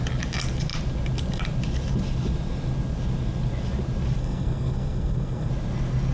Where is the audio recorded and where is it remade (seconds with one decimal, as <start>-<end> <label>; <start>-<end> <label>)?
0.0-4.2 recorded; 4.2-5.5 remade; 5.5-6.1 recorded